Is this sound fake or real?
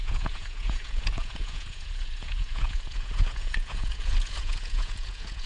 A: fake